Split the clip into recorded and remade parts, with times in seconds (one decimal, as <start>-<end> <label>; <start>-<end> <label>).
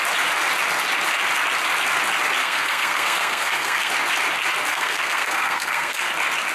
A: 0.0-2.4 recorded; 2.4-3.9 remade; 3.9-4.7 recorded; 4.7-6.1 remade; 6.1-6.5 recorded